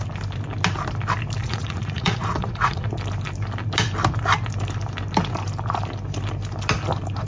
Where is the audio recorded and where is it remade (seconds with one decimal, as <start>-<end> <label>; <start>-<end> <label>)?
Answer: 0.0-1.4 recorded; 1.4-2.9 remade; 2.9-7.3 recorded